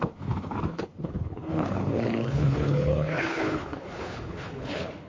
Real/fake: fake